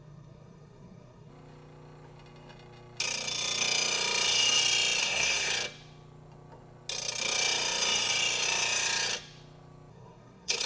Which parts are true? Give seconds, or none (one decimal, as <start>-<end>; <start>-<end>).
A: 1.3-5.0; 5.5-9.9